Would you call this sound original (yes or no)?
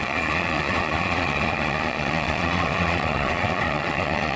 no